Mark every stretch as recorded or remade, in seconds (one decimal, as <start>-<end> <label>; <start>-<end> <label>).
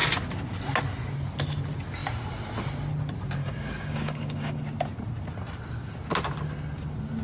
0.0-3.4 recorded; 3.4-4.6 remade; 4.6-7.2 recorded